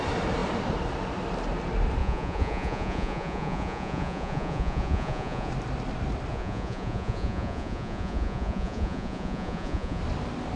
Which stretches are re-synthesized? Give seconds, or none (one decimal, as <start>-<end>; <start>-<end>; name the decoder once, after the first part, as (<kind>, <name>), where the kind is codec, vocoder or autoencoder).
2.0-5.5 (vocoder, Vocos); 6.3-10.0